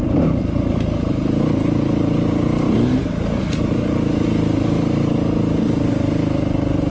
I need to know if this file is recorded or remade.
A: recorded